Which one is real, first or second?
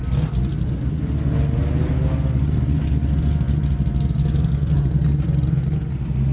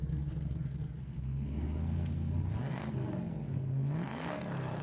first